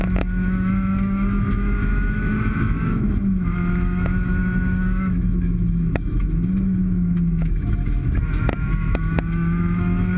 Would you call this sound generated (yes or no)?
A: yes